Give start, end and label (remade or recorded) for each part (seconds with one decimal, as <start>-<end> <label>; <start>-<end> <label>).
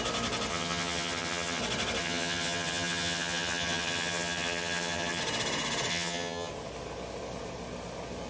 0.0-0.5 recorded; 0.5-1.6 remade; 1.6-2.0 recorded; 2.0-5.2 remade; 5.2-5.9 recorded; 5.9-6.5 remade; 6.5-8.3 recorded